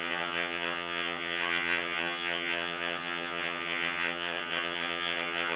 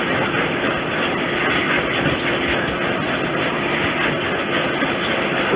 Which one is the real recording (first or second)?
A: second